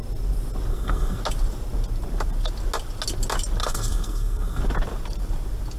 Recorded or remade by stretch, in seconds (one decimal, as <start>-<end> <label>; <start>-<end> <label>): 0.0-0.7 recorded; 0.7-1.2 remade; 1.2-3.6 recorded; 3.6-4.6 remade; 4.6-5.8 recorded